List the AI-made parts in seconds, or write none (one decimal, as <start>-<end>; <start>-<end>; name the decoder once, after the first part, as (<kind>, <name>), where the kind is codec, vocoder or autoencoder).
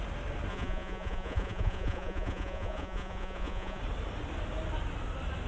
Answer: 0.5-3.8 (vocoder, Vocos)